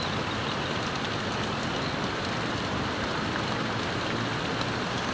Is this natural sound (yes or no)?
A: yes